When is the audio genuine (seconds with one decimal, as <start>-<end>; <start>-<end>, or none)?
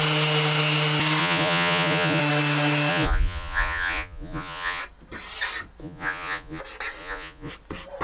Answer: 0.0-1.2; 2.2-2.9; 4.8-5.8; 6.6-7.0; 7.5-8.0